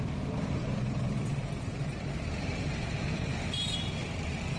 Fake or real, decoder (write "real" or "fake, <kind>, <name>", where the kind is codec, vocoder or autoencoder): fake, vocoder, BigVGAN v2